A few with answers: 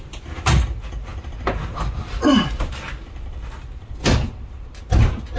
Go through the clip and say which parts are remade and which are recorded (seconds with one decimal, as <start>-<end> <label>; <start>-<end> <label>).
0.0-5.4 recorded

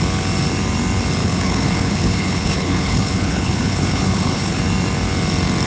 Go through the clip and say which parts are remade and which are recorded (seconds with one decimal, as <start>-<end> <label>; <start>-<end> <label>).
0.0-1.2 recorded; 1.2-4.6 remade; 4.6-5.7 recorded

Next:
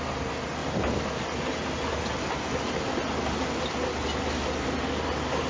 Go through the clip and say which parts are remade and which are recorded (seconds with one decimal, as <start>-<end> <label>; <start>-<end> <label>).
0.0-5.5 recorded